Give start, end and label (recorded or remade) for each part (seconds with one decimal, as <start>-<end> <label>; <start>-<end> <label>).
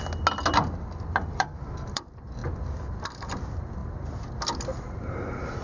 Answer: 0.0-1.2 recorded; 1.2-2.0 remade; 2.0-5.6 recorded